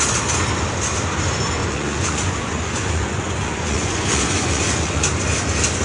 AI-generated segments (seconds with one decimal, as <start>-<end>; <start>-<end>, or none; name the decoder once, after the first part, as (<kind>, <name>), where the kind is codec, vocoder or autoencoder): 1.6-5.1 (vocoder, Vocos)